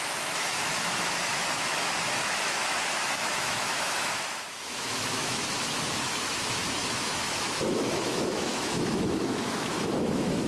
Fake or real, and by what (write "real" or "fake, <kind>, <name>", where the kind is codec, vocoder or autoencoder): fake, autoencoder, DAC-VAE